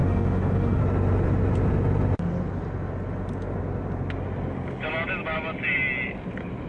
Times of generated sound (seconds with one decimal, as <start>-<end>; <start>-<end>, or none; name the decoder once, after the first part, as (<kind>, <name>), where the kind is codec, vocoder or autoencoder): 0.0-0.8 (autoencoder, DAC-VAE)